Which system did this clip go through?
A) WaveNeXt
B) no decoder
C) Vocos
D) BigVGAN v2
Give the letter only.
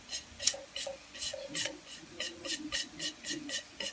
C